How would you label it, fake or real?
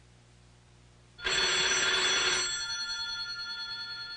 real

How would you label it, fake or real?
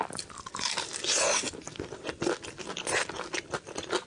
real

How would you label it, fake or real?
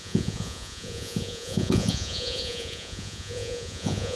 fake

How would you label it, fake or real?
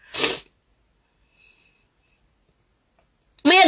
real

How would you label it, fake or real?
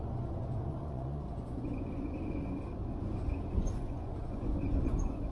fake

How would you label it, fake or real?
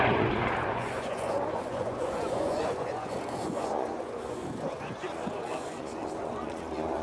fake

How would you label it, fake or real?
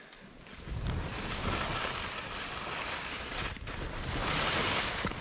real